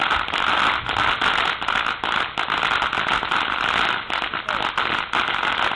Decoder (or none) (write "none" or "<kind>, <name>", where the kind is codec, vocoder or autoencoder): none